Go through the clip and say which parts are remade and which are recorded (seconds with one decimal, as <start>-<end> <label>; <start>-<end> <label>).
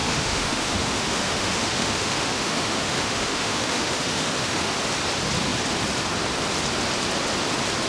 0.0-4.7 remade; 4.7-7.9 recorded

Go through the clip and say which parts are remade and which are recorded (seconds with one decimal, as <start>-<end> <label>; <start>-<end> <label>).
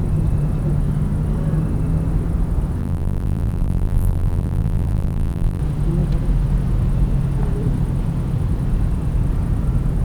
0.0-2.8 recorded; 2.8-5.6 remade; 5.6-10.0 recorded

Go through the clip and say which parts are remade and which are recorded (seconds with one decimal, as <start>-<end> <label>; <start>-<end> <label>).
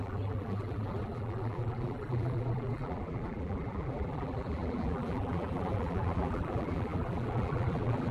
0.0-8.1 remade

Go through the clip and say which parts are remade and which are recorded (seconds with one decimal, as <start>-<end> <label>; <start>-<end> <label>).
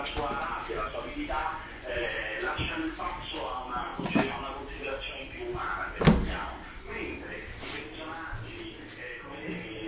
0.0-1.4 recorded; 1.4-3.0 remade; 3.0-9.9 recorded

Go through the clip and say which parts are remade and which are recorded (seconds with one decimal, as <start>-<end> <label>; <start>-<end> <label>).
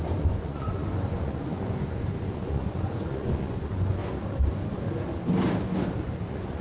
0.0-4.0 remade; 4.0-5.9 recorded; 5.9-6.6 remade